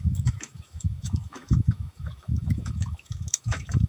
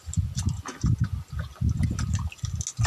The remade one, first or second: first